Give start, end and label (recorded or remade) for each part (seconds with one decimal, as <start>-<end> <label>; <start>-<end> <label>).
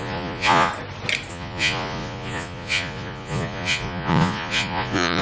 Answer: 0.0-0.7 remade; 0.7-1.3 recorded; 1.3-5.2 remade